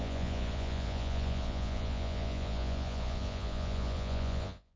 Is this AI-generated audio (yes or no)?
yes